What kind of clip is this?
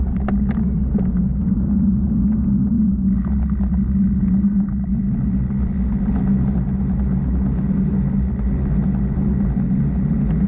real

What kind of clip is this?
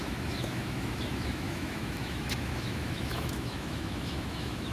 fake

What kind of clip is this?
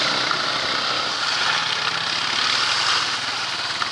real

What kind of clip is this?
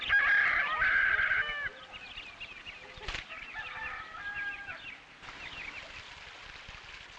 real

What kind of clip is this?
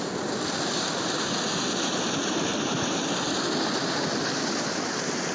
fake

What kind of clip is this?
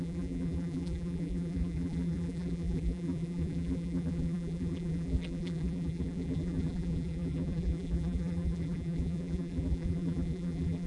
fake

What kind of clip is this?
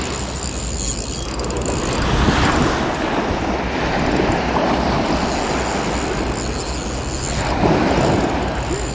real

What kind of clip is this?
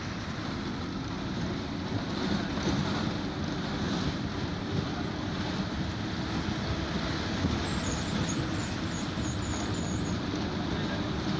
real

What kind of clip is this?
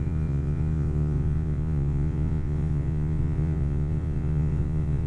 fake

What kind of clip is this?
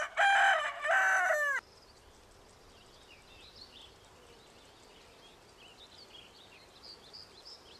real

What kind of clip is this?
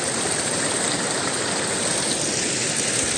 real